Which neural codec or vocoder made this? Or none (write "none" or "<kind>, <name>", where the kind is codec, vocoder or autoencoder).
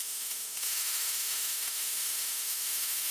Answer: autoencoder, DAC-VAE